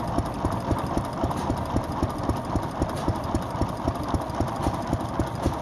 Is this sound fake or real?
real